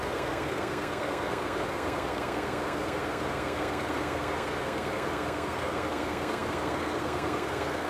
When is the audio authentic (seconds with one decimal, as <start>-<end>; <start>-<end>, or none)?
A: none